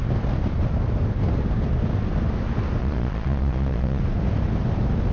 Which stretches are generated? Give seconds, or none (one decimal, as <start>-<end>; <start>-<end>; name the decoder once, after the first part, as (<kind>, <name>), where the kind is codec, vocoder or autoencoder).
2.8-4.0 (vocoder, Vocos)

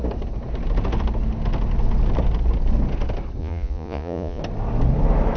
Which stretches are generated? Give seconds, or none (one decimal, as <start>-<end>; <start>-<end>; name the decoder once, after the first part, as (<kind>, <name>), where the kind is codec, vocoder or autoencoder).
3.4-4.4 (vocoder, Vocos)

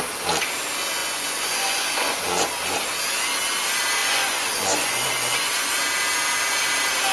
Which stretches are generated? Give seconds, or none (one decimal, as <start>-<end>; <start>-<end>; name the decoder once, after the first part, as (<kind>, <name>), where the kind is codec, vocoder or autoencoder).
1.0-2.5 (vocoder, Vocos); 4.0-5.7

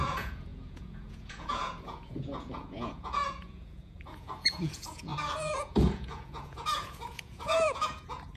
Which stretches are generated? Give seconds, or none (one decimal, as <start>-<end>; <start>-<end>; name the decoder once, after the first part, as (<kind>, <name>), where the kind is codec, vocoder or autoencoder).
0.0-8.4 (vocoder, Vocos)